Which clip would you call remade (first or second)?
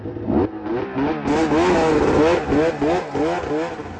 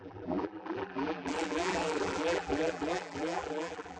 second